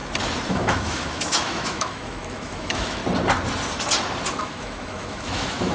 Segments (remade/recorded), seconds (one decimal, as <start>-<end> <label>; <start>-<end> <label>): 0.0-0.5 recorded; 0.5-3.0 remade; 3.0-4.4 recorded; 4.4-5.7 remade